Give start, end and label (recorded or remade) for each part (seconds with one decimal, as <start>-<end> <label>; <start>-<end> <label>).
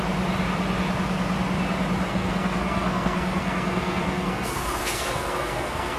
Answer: 0.0-2.1 recorded; 2.1-6.0 remade